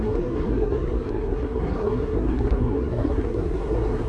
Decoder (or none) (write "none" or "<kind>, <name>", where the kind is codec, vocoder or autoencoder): codec, SNAC